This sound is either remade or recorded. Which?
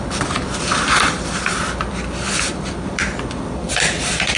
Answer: remade